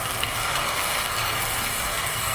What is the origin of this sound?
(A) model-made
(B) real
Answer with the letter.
A